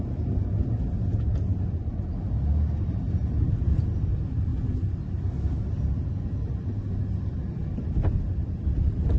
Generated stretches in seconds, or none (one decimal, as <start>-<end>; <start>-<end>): none